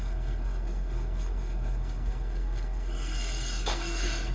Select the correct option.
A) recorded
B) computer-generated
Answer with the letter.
B